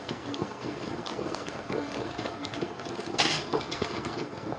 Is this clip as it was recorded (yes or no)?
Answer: no